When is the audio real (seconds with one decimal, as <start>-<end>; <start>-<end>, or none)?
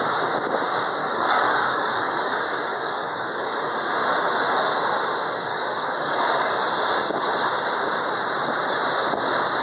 0.0-1.0; 2.3-2.7; 3.7-5.5; 6.3-9.6